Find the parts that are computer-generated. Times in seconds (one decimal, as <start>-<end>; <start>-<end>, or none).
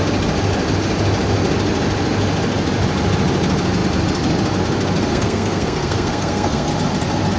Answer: 5.1-6.7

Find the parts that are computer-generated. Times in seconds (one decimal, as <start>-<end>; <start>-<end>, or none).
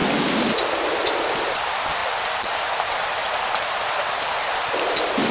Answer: none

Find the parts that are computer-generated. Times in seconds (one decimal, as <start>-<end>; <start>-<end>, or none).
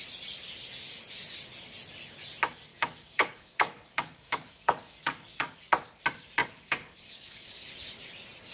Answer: 2.7-5.6; 6.4-7.7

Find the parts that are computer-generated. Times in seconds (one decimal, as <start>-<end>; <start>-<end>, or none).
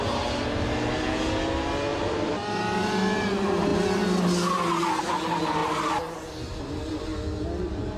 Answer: 1.9-2.6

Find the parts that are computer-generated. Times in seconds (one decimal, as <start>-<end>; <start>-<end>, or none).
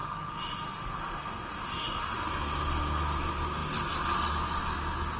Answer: 0.0-2.3